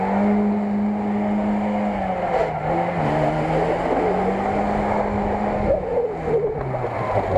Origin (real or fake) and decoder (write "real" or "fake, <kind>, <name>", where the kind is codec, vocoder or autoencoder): real